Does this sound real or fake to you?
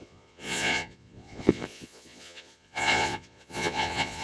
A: fake